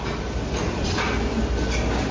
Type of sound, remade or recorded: recorded